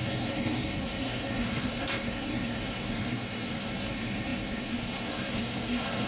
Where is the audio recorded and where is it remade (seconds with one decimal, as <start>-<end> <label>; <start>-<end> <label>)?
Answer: 0.0-6.1 remade